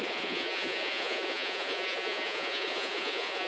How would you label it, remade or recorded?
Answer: remade